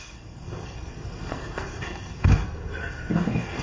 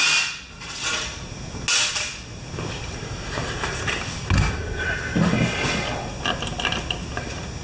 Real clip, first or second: second